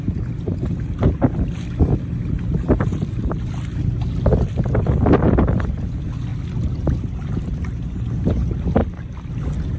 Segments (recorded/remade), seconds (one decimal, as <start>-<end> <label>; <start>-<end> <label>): 0.0-9.8 recorded